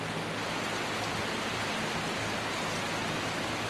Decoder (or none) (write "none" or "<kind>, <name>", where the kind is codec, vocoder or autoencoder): none